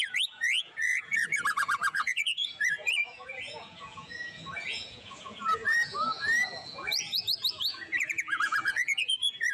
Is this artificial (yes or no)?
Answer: yes